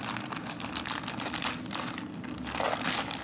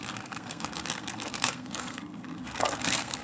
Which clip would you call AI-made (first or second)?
second